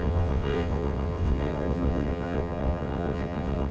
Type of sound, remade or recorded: remade